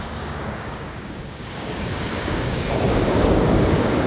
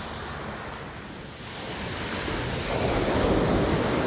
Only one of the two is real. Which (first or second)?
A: second